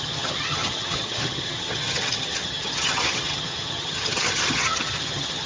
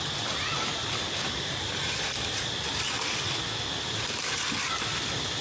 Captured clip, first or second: second